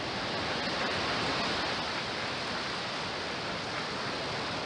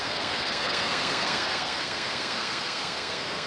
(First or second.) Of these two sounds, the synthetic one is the second